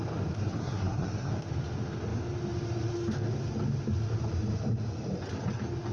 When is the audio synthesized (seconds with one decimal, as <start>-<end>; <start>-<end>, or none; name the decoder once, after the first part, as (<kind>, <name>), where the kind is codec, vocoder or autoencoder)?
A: 0.4-1.3 (codec, SNAC)